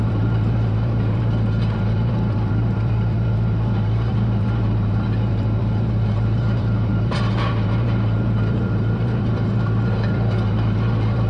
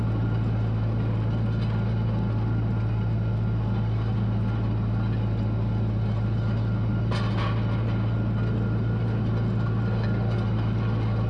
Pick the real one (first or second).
second